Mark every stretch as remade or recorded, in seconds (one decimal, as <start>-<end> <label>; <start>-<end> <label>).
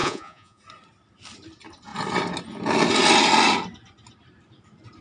0.0-0.6 remade; 0.6-5.0 recorded